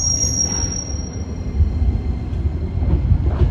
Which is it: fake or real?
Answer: real